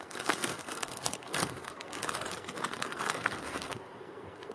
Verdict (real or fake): fake